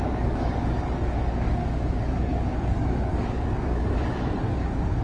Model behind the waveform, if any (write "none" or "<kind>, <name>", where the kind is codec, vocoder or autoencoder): codec, DAC